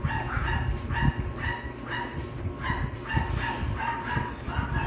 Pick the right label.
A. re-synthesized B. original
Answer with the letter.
B